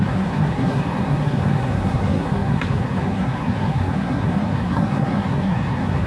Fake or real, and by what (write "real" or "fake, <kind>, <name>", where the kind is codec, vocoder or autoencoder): fake, codec, SNAC